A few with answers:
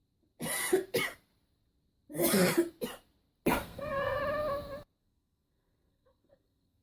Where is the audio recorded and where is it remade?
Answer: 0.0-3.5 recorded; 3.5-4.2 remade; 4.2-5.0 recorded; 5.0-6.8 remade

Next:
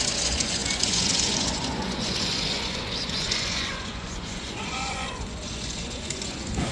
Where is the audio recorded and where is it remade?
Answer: 0.0-6.7 remade

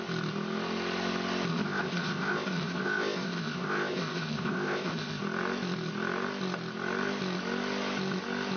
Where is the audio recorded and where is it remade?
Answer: 0.0-1.5 recorded; 1.5-5.2 remade; 5.2-8.6 recorded